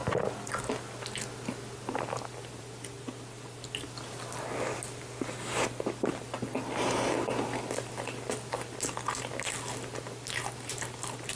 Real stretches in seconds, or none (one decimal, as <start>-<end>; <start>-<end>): 0.0-11.4